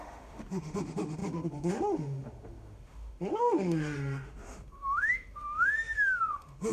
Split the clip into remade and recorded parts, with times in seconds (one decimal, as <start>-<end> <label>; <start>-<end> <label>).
0.0-6.7 remade